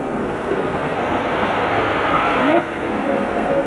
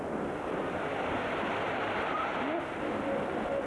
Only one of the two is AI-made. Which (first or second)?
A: first